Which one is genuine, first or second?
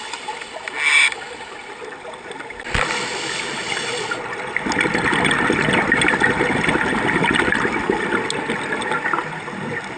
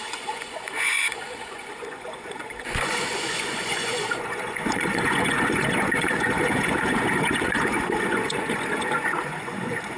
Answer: first